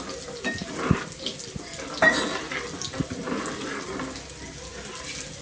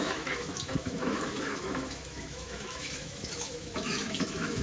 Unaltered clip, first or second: first